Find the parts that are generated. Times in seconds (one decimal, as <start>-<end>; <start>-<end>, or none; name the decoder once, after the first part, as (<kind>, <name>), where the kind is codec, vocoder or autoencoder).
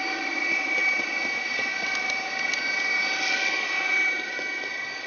none